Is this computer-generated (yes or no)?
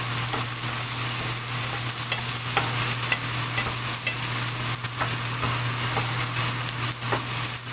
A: no